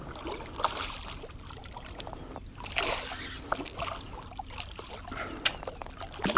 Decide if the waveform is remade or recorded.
recorded